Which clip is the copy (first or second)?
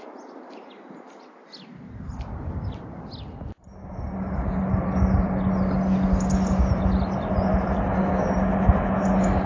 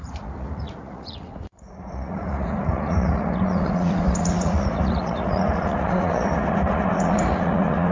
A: second